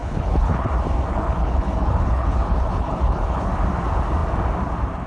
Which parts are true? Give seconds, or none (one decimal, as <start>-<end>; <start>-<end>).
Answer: 0.7-1.1; 3.5-5.1